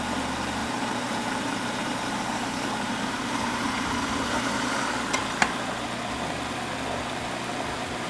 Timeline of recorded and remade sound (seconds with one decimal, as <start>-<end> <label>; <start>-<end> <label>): 0.0-0.6 recorded; 0.6-4.8 remade; 4.8-8.1 recorded